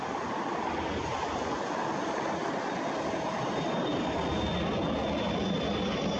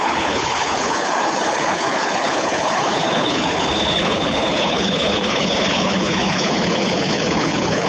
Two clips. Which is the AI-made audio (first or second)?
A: second